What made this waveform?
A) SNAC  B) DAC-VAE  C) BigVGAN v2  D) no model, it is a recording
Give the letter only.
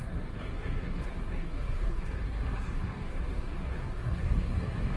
A